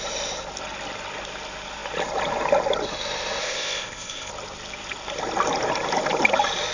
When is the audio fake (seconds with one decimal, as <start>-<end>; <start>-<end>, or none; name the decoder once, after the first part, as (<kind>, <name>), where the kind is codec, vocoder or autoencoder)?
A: 3.4-4.3 (codec, ZipCodec)